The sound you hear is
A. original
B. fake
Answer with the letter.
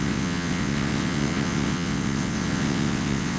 B